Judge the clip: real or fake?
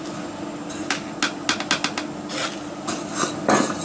real